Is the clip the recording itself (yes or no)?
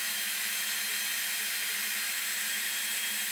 no